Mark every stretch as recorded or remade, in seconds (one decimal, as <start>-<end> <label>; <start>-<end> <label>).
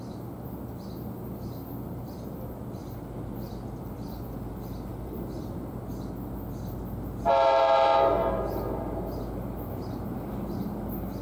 0.0-4.9 recorded; 4.9-5.8 remade; 5.8-11.2 recorded